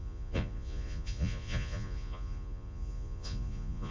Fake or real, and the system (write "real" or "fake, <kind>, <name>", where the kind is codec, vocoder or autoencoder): fake, vocoder, Vocos